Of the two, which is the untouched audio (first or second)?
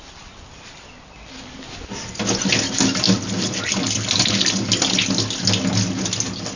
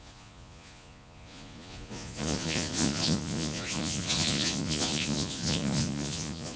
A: first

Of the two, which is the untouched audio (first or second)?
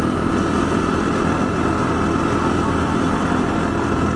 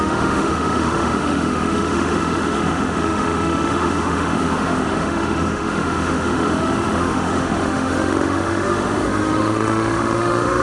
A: first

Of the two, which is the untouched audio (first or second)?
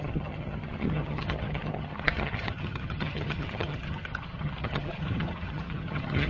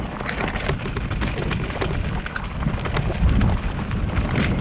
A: second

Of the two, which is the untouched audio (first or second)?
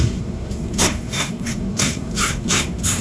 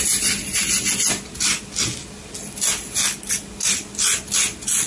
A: second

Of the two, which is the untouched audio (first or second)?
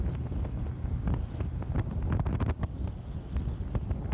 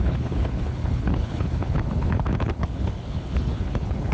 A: first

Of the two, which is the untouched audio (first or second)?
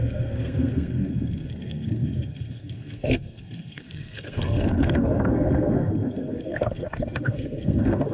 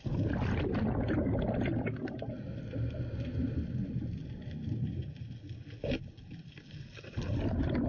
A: second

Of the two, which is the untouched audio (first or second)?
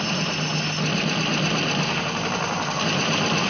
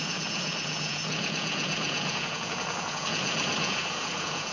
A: first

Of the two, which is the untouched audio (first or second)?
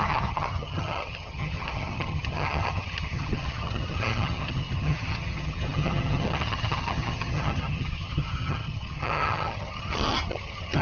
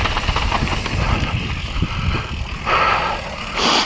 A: second